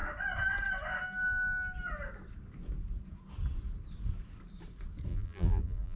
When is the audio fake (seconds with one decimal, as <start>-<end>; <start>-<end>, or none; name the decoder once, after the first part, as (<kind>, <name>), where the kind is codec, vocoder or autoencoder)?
5.1-6.0 (vocoder, BigVGAN v2)